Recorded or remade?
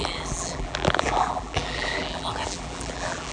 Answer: remade